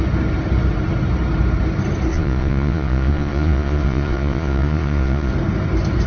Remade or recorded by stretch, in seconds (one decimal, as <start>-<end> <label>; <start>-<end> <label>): 0.0-2.1 recorded; 2.1-5.3 remade; 5.3-6.1 recorded